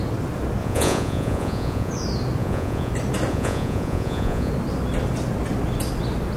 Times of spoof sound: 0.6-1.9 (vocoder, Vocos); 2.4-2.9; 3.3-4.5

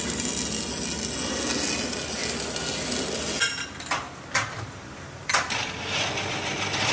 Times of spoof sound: none

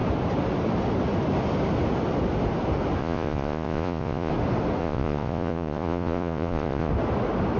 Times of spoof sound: 3.0-4.3 (vocoder, Vocos); 4.8-6.9

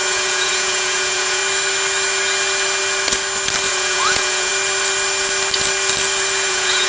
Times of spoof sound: 0.0-1.4 (vocoder, Vocos); 3.7-4.5; 6.5-6.9